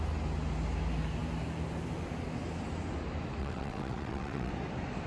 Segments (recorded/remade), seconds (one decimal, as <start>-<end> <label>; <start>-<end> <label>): 0.0-3.4 recorded; 3.4-4.5 remade; 4.5-5.1 recorded